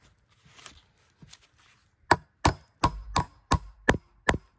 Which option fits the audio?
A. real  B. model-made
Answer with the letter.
A